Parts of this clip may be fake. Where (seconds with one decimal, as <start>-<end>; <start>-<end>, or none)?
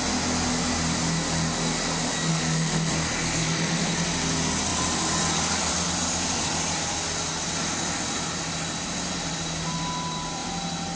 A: 2.3-3.9